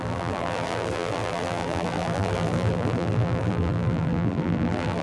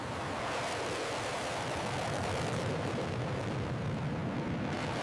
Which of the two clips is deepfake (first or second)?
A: first